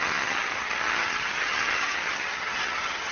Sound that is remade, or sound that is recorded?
remade